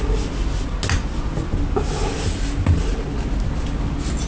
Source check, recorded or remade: recorded